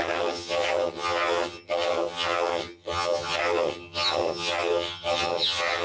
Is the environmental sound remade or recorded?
remade